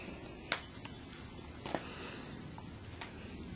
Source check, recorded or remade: recorded